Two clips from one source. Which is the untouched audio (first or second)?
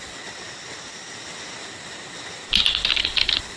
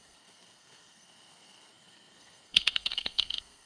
first